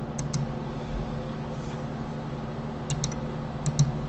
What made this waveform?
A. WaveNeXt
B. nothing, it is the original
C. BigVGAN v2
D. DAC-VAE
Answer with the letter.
B